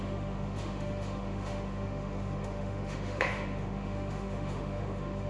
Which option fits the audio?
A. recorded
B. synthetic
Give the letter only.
B